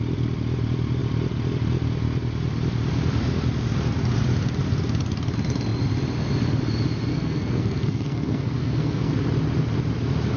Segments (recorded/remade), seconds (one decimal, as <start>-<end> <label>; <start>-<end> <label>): 0.0-7.1 recorded; 7.1-9.1 remade; 9.1-10.4 recorded